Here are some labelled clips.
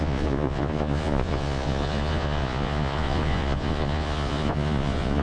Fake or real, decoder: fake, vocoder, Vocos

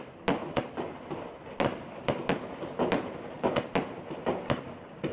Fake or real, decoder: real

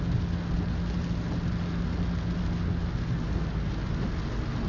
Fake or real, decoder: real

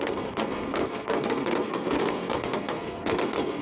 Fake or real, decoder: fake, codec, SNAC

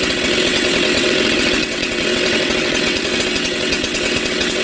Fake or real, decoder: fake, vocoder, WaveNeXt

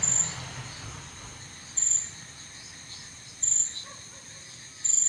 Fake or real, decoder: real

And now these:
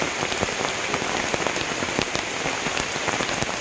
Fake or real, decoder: real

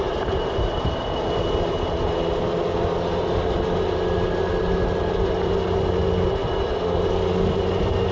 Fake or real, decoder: real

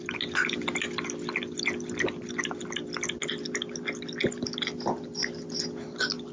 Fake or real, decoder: real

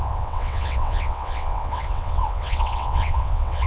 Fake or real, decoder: fake, vocoder, WaveNeXt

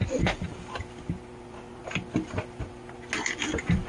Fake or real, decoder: real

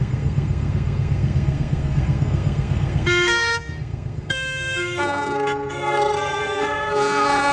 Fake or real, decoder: fake, codec, SNAC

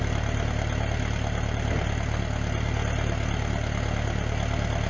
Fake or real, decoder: real